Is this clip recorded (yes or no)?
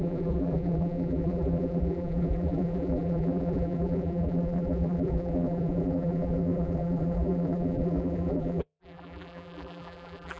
no